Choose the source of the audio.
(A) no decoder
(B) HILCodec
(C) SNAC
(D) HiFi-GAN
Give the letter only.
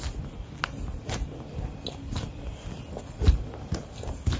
A